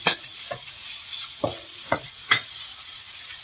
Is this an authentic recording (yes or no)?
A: no